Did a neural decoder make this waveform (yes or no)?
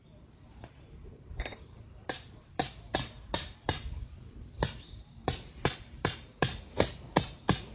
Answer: yes